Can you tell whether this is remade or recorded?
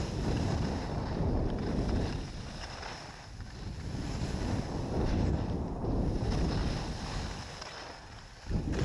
recorded